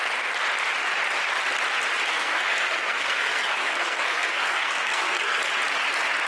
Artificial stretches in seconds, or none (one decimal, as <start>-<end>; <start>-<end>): 2.1-5.4